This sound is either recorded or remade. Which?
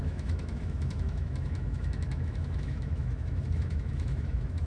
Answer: remade